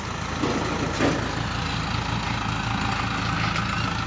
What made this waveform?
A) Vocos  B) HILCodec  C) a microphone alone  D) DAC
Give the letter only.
C